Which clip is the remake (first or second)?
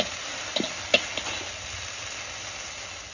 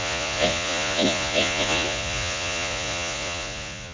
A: second